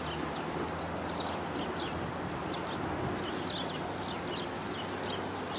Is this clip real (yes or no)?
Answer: yes